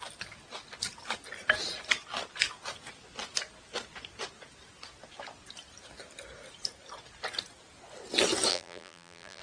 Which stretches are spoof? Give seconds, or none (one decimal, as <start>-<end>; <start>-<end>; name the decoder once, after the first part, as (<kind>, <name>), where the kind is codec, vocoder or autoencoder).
8.5-9.4 (vocoder, BigVGAN v2)